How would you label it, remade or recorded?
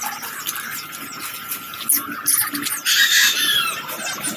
recorded